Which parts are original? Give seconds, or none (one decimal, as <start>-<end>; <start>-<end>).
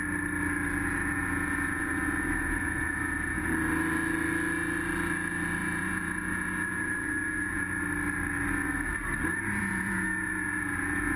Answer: 0.0-1.0; 3.5-5.6; 7.8-9.6